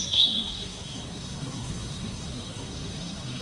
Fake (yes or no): yes